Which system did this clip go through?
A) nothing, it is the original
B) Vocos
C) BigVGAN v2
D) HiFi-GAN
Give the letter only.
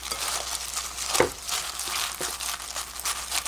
A